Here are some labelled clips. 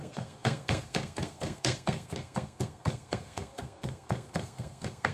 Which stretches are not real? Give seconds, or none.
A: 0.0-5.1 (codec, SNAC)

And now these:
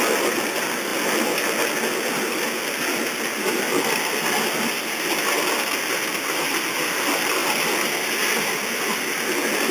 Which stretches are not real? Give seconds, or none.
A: none

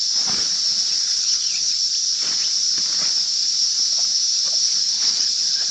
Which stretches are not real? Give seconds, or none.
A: 1.0-1.8 (codec, HILCodec); 4.8-5.7

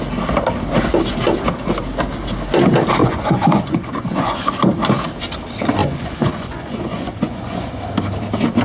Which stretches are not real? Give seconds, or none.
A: 3.0-4.5 (vocoder, Vocos); 5.8-7.8

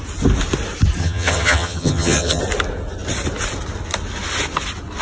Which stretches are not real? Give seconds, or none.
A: 1.0-2.4 (vocoder, HiFi-GAN)

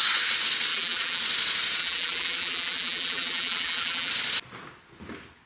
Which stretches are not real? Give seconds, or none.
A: 0.7-1.2 (vocoder, BigVGAN v2); 1.8-4.1